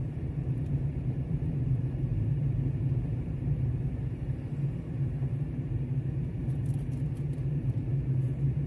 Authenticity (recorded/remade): remade